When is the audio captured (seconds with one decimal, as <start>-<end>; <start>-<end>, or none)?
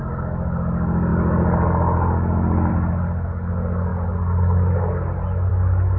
0.0-6.0